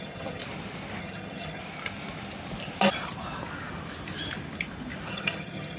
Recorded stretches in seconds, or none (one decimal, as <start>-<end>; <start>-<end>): 0.4-1.0; 1.6-5.1